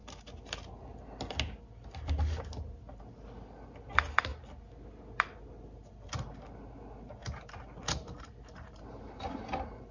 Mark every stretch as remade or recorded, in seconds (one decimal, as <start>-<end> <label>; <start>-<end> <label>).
0.0-9.9 recorded